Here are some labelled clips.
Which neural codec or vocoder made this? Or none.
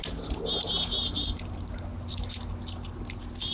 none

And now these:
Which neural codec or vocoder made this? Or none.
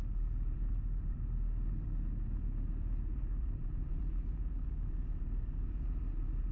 vocoder, BigVGAN v2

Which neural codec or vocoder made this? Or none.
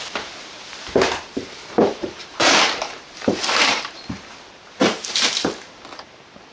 vocoder, BigVGAN v2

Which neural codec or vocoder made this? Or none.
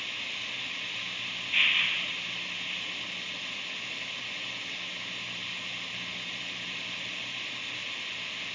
none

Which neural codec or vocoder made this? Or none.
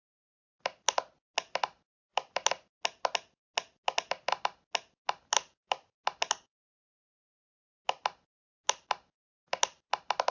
none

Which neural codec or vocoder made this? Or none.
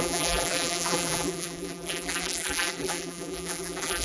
vocoder, BigVGAN v2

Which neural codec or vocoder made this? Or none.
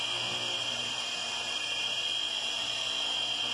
none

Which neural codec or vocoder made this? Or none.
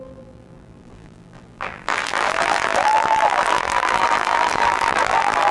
vocoder, BigVGAN v2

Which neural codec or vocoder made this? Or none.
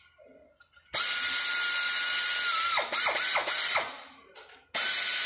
none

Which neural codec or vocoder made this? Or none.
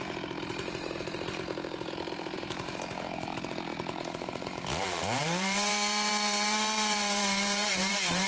vocoder, BigVGAN v2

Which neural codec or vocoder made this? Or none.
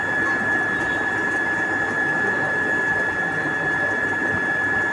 none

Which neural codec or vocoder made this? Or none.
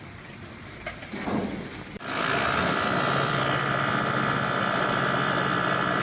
vocoder, BigVGAN v2